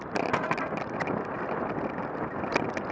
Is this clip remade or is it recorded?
recorded